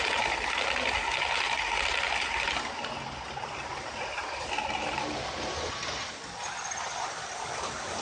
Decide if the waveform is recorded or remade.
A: recorded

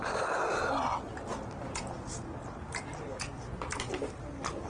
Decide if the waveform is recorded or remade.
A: recorded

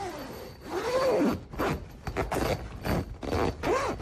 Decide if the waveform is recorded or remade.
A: recorded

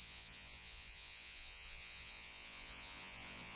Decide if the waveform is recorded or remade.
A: remade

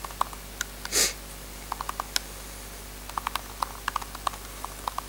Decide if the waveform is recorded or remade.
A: recorded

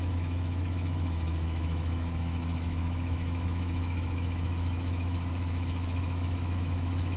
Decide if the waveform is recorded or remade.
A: remade